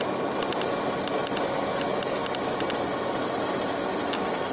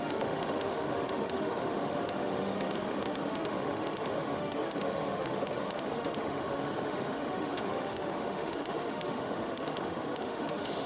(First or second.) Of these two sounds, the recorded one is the first